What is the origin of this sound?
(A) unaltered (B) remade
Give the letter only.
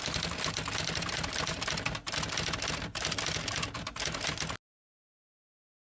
A